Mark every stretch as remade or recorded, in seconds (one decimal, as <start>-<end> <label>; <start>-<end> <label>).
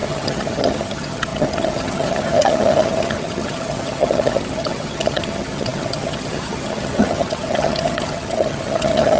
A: 0.0-9.2 remade